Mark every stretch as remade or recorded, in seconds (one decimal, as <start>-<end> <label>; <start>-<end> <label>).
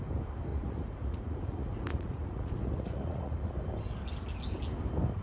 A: 0.0-0.5 recorded; 0.5-3.5 remade; 3.5-5.2 recorded